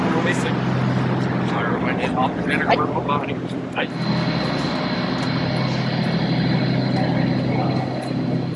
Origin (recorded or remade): recorded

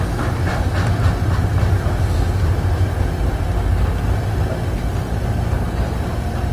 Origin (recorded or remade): recorded